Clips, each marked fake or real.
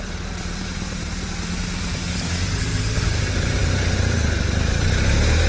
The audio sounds fake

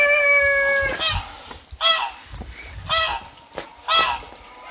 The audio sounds real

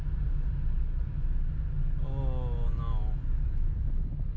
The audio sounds real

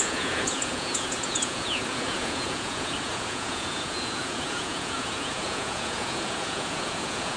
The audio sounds fake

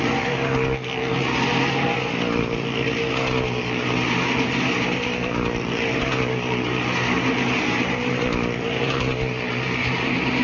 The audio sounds real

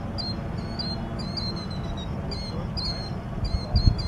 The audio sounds real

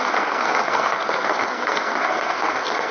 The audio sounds fake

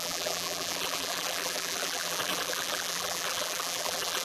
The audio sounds fake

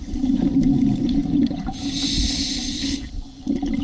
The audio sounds real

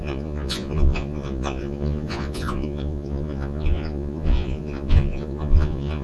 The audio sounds fake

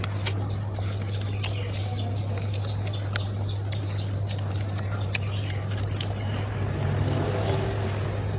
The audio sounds real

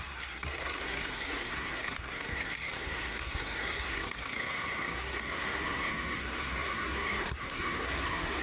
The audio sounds fake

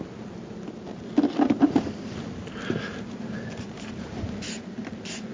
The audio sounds real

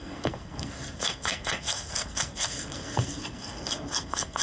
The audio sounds fake